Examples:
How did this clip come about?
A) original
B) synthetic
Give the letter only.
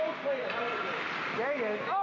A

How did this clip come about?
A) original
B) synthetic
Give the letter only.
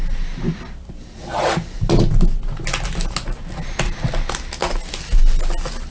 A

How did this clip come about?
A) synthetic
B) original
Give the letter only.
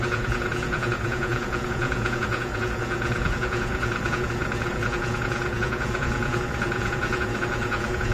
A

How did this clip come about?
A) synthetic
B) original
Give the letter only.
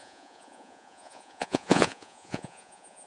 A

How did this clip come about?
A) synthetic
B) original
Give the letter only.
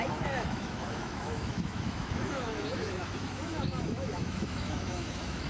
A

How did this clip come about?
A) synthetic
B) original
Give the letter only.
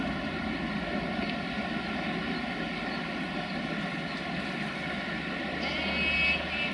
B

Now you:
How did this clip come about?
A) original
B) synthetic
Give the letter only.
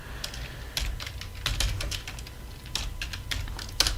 A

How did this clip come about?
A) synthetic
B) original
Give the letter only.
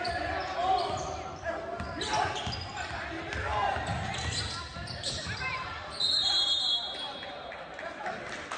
B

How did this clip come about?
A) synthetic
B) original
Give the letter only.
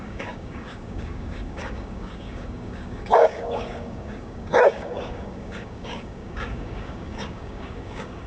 A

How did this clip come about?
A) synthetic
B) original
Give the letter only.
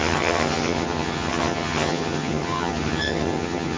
A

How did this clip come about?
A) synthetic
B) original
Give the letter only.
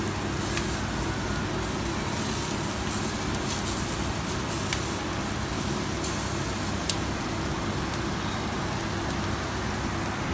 B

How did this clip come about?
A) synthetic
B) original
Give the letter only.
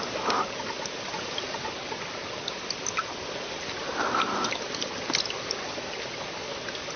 B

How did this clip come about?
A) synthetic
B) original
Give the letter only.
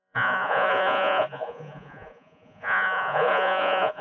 A